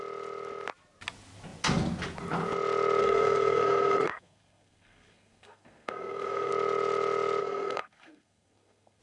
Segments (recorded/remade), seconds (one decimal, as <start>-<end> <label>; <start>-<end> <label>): 0.0-3.0 recorded; 3.0-6.5 remade; 6.5-7.4 recorded; 7.4-9.0 remade